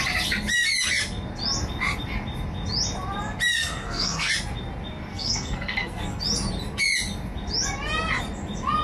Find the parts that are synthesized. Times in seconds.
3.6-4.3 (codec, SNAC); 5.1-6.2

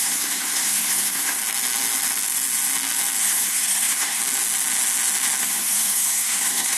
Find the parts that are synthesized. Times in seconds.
0.0-1.4 (codec, SNAC); 3.2-4.2; 5.4-6.8

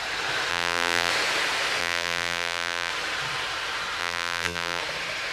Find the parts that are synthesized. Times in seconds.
0.5-1.1 (vocoder, BigVGAN v2); 1.8-2.9; 4.0-4.8

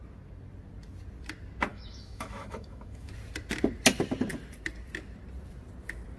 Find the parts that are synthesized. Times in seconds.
1.7-3.1 (autoencoder, DAC-VAE)

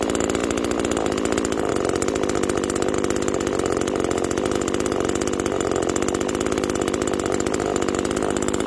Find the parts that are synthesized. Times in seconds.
none

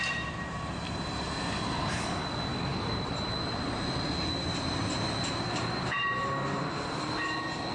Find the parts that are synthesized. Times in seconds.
2.7-7.2 (vocoder, BigVGAN v2)

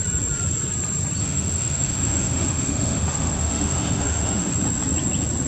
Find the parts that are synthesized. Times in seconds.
1.2-4.5 (autoencoder, DAC-VAE)

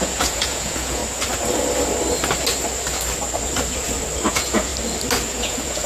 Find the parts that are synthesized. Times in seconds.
0.0-1.0 (vocoder, Vocos); 4.3-4.7; 5.3-5.9